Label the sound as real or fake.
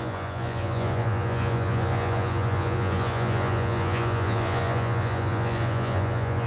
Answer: fake